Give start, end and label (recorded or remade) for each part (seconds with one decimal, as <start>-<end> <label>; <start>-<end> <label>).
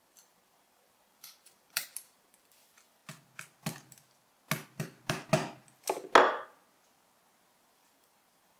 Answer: 0.0-3.0 remade; 3.0-7.6 recorded; 7.6-8.6 remade